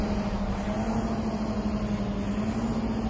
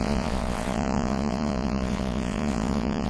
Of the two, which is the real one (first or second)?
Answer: first